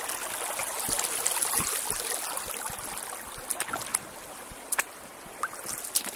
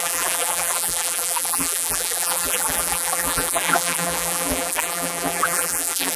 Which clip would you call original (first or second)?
first